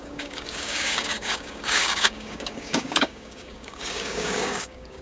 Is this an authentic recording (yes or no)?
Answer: no